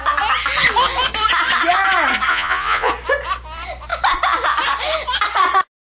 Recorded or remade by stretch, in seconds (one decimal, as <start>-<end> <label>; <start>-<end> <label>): 0.0-2.3 recorded; 2.3-2.9 remade; 2.9-5.8 recorded